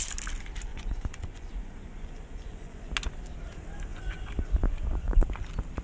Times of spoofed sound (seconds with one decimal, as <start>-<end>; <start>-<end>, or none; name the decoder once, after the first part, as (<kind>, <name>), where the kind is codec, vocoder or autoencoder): 0.7-2.9 (vocoder, Vocos); 3.9-5.3